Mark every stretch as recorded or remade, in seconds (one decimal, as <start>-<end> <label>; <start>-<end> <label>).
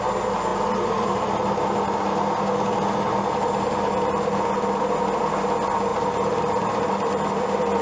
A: 0.0-5.9 recorded; 5.9-6.8 remade; 6.8-7.8 recorded